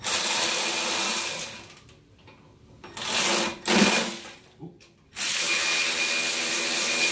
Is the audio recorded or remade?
recorded